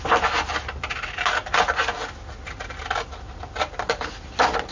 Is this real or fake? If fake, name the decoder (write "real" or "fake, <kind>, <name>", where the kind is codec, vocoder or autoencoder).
real